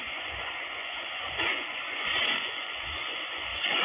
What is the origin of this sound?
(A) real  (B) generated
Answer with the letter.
B